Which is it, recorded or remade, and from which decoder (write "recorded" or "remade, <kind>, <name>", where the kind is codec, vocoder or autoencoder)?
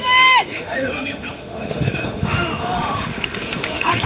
remade, autoencoder, DAC-VAE